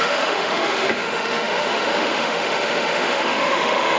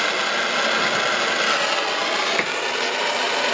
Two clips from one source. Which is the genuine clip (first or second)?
second